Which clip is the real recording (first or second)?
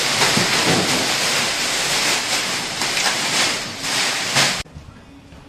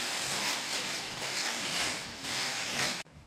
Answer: first